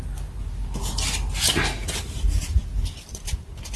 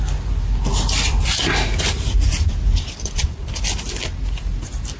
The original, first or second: first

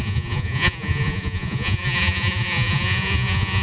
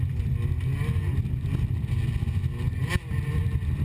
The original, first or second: second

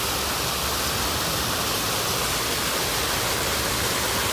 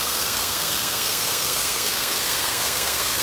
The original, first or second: first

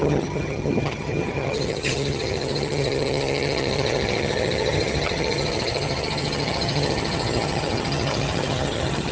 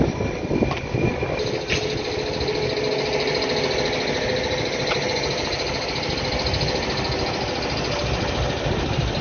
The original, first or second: second